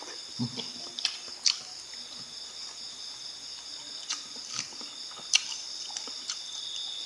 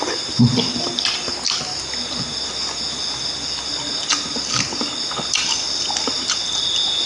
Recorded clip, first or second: second